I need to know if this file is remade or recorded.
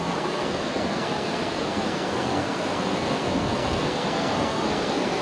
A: remade